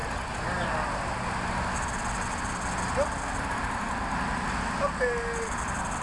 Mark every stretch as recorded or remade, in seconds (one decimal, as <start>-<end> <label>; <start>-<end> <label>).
0.0-6.0 recorded

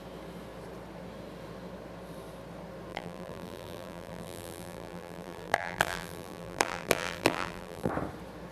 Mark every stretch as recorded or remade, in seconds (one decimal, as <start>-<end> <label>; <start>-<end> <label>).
0.0-2.9 recorded; 2.9-7.9 remade; 7.9-8.5 recorded